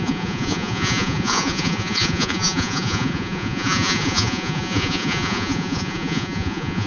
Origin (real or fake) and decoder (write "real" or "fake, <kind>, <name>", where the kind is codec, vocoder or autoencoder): fake, vocoder, Vocos